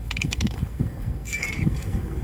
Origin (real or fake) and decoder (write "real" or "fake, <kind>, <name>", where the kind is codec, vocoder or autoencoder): fake, codec, SNAC